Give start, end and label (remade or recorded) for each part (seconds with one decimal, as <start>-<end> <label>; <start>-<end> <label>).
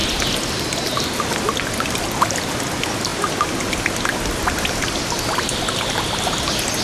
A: 0.0-6.8 recorded